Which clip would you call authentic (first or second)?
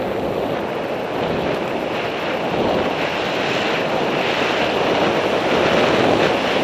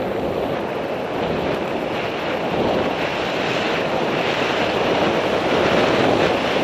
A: first